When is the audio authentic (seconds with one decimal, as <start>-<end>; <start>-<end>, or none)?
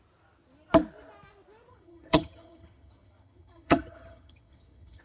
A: 0.0-1.7